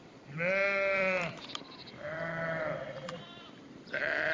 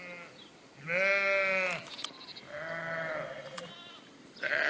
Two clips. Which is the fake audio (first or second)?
first